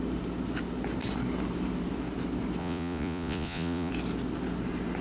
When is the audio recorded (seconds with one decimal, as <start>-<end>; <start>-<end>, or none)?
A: 0.0-2.6; 3.9-5.0